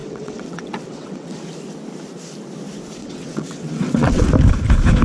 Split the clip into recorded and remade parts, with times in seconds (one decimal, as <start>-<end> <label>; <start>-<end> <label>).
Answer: 0.0-1.4 remade; 1.4-3.0 recorded; 3.0-4.3 remade; 4.3-5.0 recorded